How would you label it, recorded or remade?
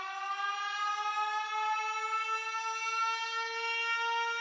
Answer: recorded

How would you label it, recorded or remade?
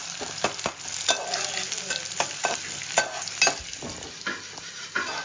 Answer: recorded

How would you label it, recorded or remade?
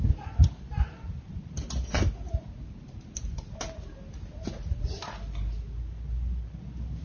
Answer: recorded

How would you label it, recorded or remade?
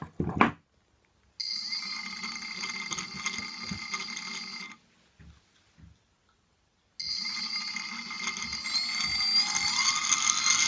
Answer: recorded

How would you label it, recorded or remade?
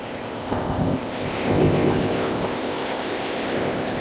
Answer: remade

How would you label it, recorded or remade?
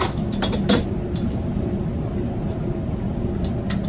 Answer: recorded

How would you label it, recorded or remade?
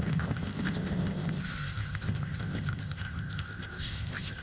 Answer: remade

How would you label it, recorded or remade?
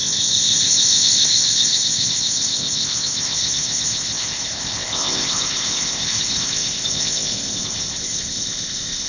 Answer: remade